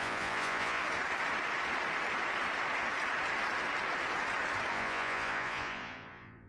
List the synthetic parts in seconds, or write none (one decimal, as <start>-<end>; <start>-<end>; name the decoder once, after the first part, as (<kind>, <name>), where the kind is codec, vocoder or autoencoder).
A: 0.0-0.8 (vocoder, Vocos); 4.7-6.5